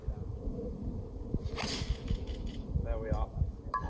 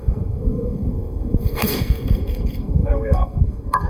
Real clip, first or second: first